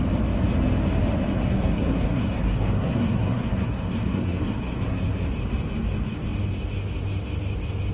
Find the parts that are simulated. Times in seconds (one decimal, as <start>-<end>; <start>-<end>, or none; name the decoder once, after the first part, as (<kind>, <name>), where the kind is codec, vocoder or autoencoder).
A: 1.5-5.3 (codec, SNAC)